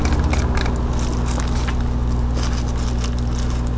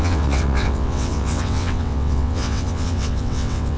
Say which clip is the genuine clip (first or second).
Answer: first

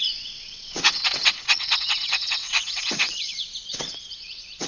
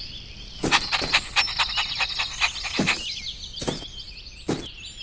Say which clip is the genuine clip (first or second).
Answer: second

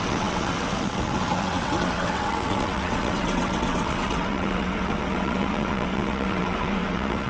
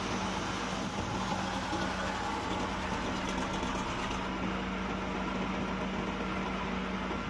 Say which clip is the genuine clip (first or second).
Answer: second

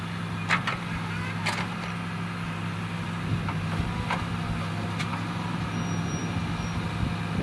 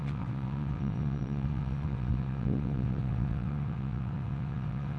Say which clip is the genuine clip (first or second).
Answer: first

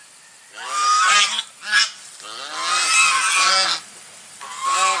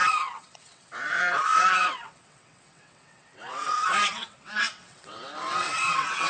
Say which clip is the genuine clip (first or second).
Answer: first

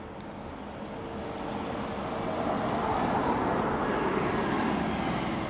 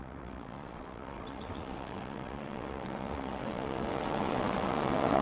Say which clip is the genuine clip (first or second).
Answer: first